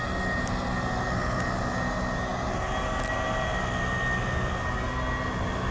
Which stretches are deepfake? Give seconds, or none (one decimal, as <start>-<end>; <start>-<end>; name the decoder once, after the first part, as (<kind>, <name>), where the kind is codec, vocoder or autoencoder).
none